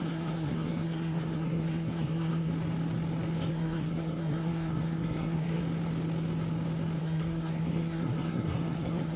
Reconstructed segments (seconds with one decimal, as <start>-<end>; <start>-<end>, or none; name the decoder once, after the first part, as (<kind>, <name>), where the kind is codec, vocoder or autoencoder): 0.0-2.5 (codec, SNAC); 3.5-5.6; 7.0-9.2